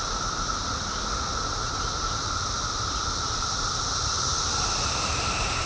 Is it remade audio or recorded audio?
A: remade